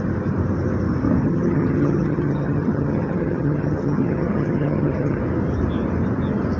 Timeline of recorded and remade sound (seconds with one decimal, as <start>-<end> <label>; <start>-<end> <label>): 0.0-1.2 recorded; 1.2-5.2 remade; 5.2-6.6 recorded